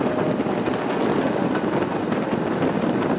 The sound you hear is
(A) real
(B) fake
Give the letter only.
A